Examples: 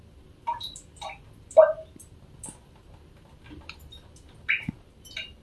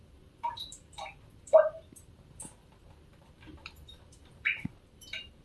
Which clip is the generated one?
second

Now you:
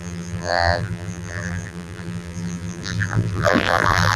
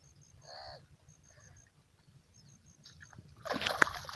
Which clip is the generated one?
first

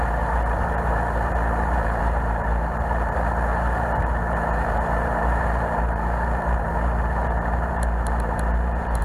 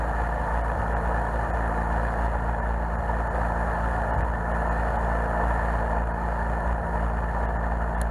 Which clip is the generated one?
first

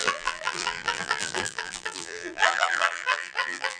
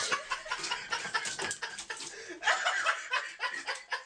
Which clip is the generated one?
first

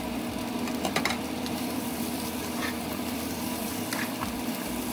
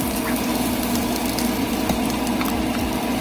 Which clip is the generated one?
first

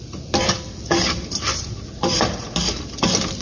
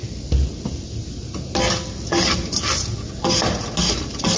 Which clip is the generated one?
first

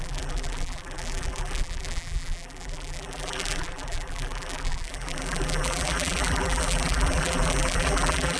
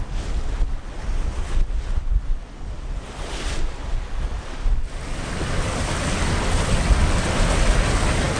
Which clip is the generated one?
first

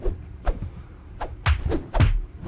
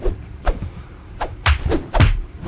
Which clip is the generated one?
second